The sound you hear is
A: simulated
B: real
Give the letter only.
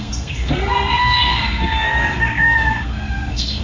A